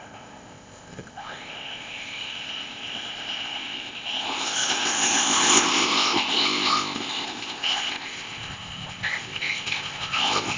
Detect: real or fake fake